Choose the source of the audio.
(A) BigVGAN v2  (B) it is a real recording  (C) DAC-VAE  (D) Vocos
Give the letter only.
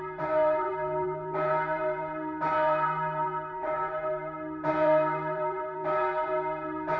A